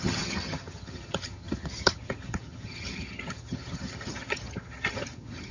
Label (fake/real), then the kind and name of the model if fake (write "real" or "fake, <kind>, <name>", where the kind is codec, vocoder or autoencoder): fake, vocoder, HiFi-GAN